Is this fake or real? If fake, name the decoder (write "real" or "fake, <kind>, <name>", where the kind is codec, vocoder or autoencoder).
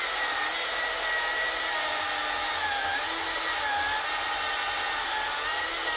real